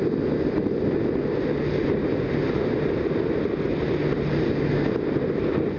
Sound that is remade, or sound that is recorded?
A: recorded